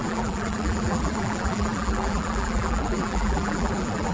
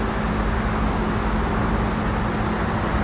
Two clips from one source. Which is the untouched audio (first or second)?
second